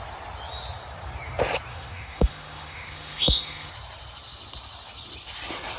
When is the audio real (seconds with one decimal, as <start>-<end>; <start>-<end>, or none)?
0.0-1.7; 3.7-5.8

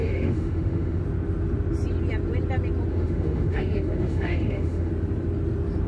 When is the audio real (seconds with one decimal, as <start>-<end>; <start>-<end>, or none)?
1.0-2.9; 4.9-5.9

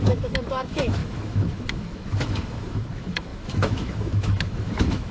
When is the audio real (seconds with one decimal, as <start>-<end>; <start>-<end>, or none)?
none

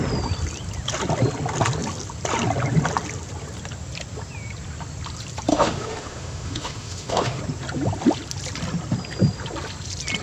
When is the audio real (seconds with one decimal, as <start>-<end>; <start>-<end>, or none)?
0.0-5.5; 7.4-10.2